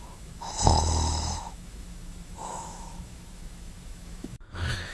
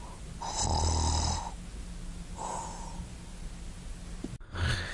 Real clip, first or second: second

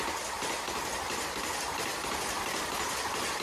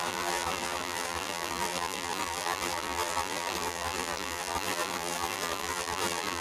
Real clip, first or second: first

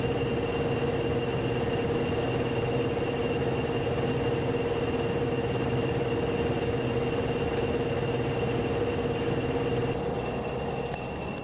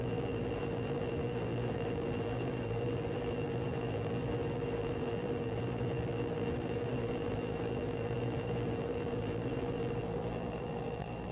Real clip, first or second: first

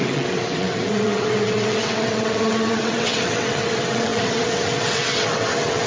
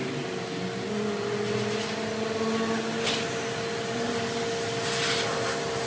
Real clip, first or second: second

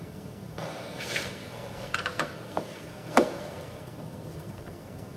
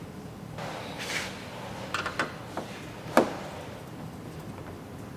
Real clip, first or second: second